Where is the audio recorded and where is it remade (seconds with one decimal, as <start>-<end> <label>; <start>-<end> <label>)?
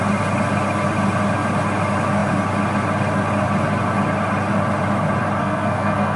0.0-5.4 recorded; 5.4-6.2 remade